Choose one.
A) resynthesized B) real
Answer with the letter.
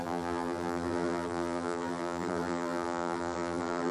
A